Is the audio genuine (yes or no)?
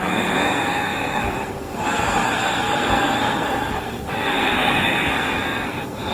no